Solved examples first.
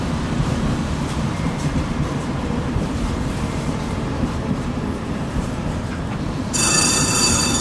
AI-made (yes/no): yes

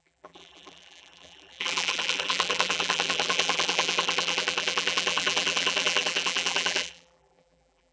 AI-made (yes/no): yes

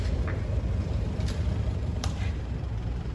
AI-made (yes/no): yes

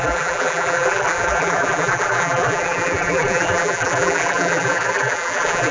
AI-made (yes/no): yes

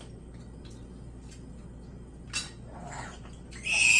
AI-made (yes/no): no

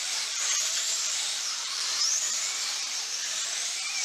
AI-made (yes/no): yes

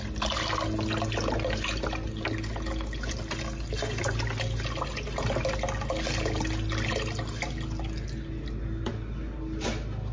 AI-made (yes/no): no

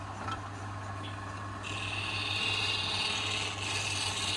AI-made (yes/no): no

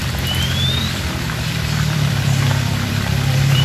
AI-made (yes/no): yes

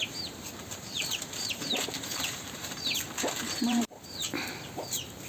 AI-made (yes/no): yes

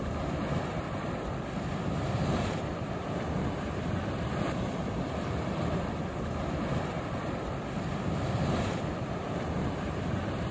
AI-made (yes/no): yes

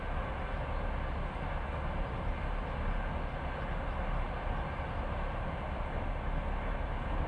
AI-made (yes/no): no